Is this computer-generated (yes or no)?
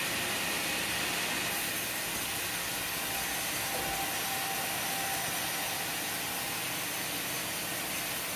no